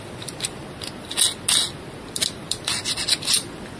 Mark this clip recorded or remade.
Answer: recorded